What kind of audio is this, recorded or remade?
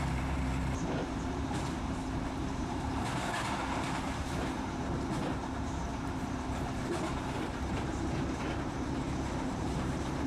remade